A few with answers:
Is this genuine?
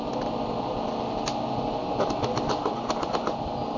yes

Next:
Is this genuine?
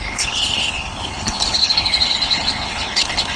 no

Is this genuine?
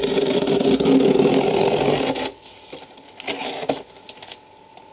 yes